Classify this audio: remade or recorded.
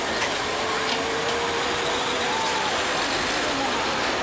recorded